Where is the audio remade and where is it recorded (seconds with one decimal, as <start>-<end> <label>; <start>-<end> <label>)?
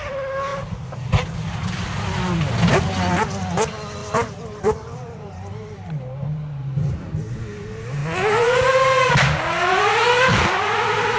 0.0-4.0 recorded; 4.0-6.9 remade; 6.9-11.2 recorded